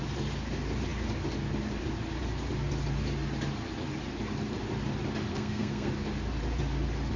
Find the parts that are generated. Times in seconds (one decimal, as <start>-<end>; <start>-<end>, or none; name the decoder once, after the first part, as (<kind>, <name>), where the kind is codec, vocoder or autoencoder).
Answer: 5.3-5.9 (codec, SNAC)